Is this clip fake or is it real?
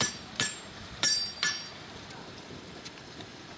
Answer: fake